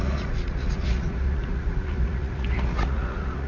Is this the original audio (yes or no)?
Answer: no